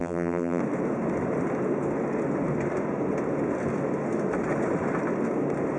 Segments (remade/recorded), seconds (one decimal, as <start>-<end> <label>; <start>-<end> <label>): 0.0-0.6 remade; 0.6-5.8 recorded